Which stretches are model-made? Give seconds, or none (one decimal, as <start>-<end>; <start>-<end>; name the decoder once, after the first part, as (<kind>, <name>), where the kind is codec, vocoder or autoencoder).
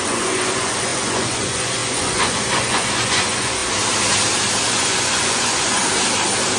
0.0-3.6 (vocoder, Vocos); 4.6-5.8